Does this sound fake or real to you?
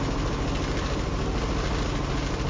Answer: real